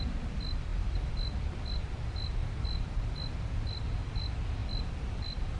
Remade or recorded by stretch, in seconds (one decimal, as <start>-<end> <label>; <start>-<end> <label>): 0.0-5.6 recorded